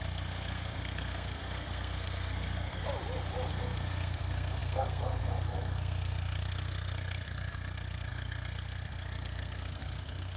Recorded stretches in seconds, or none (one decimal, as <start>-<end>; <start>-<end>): 2.8-3.5